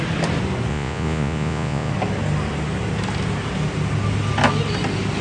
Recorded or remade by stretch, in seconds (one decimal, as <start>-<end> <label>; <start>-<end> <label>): 0.0-0.7 recorded; 0.7-1.9 remade; 1.9-5.2 recorded